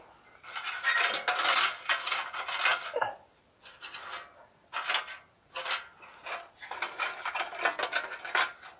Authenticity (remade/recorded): recorded